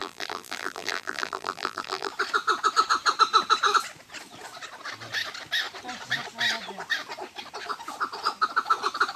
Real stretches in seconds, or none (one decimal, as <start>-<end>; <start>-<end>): 2.1-9.2

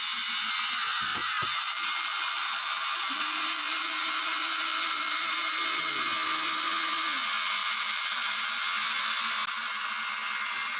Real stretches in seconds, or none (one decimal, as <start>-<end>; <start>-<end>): 0.0-1.1; 6.0-7.6; 8.6-10.8

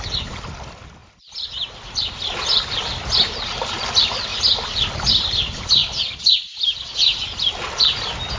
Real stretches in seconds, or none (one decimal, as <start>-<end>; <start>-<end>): 1.0-3.7; 5.8-8.4

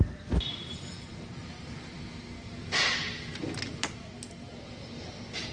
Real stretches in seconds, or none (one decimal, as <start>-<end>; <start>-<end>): 0.0-5.5

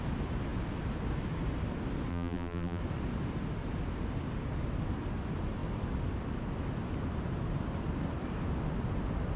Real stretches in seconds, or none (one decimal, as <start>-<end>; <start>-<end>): 0.0-2.1; 2.8-9.4

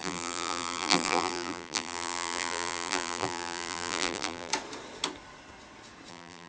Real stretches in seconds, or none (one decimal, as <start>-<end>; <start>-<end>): 4.5-6.1